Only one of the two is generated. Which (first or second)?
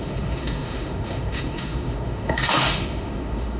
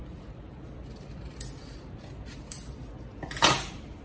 first